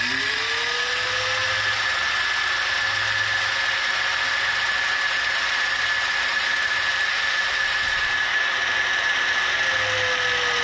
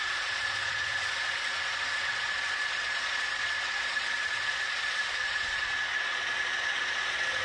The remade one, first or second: second